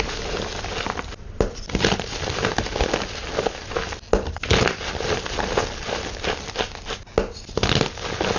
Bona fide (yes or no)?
yes